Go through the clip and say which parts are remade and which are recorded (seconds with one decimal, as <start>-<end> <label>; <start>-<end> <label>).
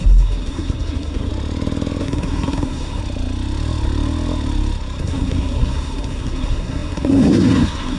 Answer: 0.0-1.3 remade; 1.3-2.0 recorded; 2.0-3.0 remade; 3.0-5.0 recorded; 5.0-8.0 remade